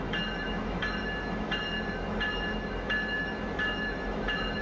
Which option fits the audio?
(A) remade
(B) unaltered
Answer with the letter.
A